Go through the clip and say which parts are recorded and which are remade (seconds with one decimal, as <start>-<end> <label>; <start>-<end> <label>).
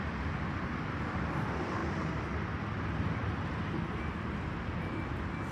0.0-5.5 recorded